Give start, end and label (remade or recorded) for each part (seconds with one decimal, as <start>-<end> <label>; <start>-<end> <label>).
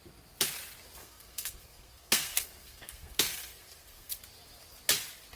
0.0-1.0 recorded; 1.0-4.2 remade; 4.2-5.4 recorded